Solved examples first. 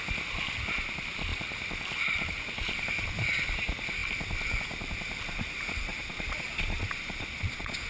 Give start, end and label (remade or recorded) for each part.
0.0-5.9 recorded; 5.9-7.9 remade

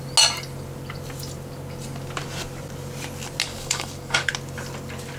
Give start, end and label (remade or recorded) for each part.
0.0-3.4 recorded; 3.4-4.3 remade; 4.3-5.2 recorded

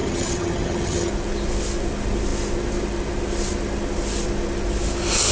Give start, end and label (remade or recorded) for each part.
0.0-1.1 remade; 1.1-5.3 recorded

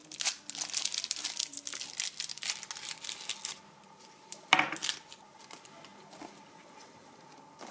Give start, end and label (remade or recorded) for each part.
0.0-3.8 recorded; 3.8-4.8 remade; 4.8-5.3 recorded; 5.3-5.9 remade; 5.9-6.5 recorded; 6.5-7.7 remade

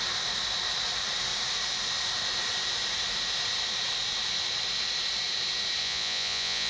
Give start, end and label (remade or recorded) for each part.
0.0-5.8 recorded; 5.8-6.7 remade